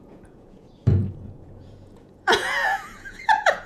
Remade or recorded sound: remade